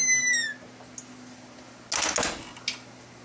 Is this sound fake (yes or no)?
no